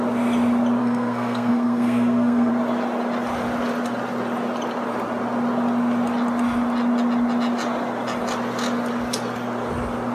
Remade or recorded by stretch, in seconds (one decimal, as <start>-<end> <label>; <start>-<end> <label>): 0.0-0.8 recorded; 0.8-2.5 remade; 2.5-10.1 recorded